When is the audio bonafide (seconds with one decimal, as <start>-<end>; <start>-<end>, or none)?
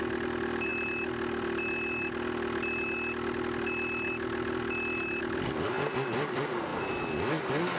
0.7-5.2; 6.7-7.8